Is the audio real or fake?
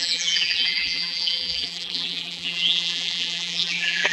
fake